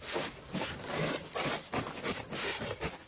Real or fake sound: real